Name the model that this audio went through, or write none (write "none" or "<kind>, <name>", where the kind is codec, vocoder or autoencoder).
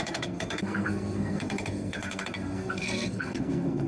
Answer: codec, SNAC